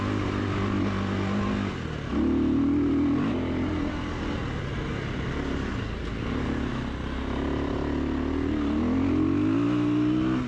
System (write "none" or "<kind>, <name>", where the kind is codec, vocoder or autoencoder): none